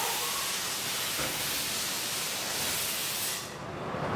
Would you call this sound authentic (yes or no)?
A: no